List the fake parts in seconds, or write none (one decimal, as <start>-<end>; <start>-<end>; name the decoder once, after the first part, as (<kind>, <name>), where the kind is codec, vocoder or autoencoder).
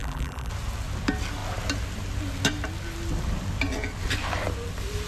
0.0-0.5 (vocoder, BigVGAN v2)